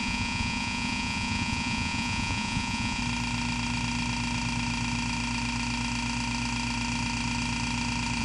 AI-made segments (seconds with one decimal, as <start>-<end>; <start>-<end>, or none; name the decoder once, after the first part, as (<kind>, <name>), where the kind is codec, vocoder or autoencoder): 0.0-3.0 (vocoder, Vocos)